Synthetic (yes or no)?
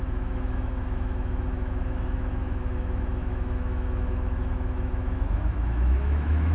yes